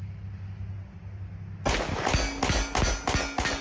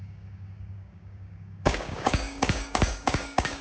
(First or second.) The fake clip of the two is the second